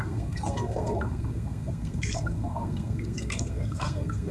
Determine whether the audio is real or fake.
fake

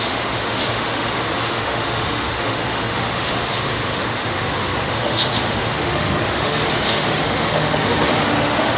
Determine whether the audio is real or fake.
fake